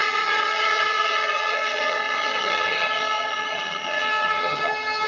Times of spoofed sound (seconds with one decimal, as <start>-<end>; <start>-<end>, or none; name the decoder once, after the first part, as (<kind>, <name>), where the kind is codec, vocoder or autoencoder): 0.0-5.1 (vocoder, HiFi-GAN)